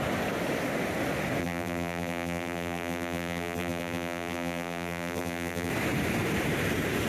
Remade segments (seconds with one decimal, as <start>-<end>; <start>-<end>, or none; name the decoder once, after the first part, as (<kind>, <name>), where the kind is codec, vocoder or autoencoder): 1.4-5.7 (vocoder, BigVGAN v2)

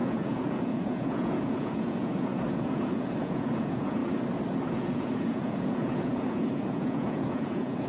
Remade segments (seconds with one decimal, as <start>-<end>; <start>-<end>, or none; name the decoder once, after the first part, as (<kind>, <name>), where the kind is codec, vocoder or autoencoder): 0.0-4.0 (vocoder, Vocos); 4.7-7.9

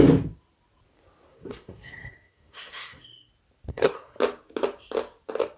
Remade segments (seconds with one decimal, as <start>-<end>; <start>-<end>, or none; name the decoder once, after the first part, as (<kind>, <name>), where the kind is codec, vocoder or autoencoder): 1.3-3.3 (codec, SNAC); 3.7-4.2

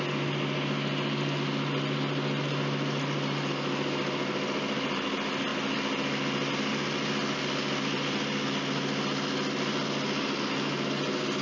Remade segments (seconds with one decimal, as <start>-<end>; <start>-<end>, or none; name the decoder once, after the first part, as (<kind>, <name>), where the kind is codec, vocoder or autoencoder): none